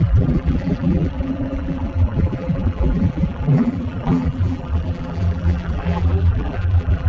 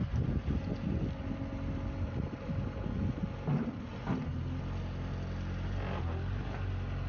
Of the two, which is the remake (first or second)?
first